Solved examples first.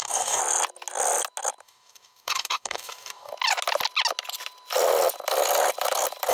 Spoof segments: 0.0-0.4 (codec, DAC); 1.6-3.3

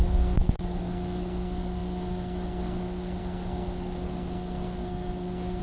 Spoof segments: 0.0-5.6 (codec, SNAC)

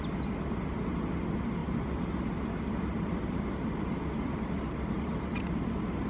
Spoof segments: 1.6-5.3 (vocoder, BigVGAN v2)